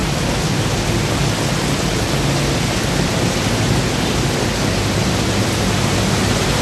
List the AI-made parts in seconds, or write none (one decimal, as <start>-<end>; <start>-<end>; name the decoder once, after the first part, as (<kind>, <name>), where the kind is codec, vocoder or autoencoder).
none